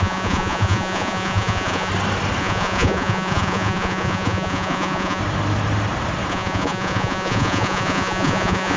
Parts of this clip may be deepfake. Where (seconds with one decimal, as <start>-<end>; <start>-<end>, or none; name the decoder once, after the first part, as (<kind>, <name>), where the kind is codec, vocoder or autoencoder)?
0.0-1.9 (vocoder, Vocos); 2.4-5.2; 6.3-8.8